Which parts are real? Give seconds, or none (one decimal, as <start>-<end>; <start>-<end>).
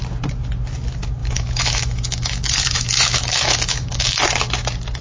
0.0-1.2; 4.2-5.0